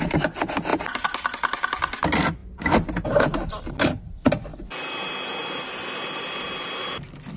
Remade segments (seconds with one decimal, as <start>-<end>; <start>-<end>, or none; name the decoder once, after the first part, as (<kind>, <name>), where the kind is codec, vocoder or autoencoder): none